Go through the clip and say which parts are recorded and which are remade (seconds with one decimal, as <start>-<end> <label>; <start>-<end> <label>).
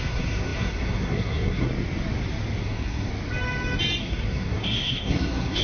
0.0-1.7 remade; 1.7-2.6 recorded; 2.6-3.1 remade; 3.1-4.0 recorded; 4.0-5.6 remade